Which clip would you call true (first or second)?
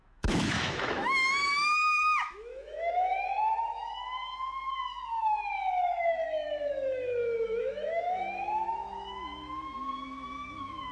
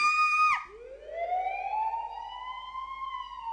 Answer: second